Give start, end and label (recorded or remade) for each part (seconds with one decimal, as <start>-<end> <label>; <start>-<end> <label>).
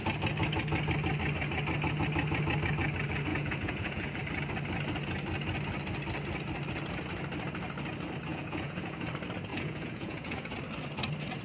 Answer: 0.0-3.3 recorded; 3.3-4.2 remade; 4.2-8.3 recorded; 8.3-9.1 remade; 9.1-9.5 recorded; 9.5-10.6 remade; 10.6-11.4 recorded